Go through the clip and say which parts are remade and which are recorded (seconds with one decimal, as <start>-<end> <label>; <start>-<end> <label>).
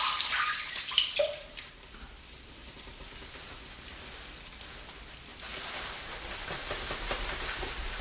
0.0-5.3 remade; 5.3-6.1 recorded; 6.1-8.0 remade